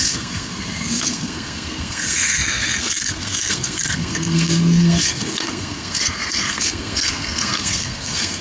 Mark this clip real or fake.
fake